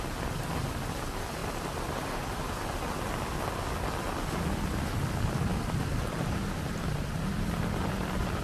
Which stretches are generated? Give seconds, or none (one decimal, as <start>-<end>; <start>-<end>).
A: 1.4-2.4; 5.5-7.3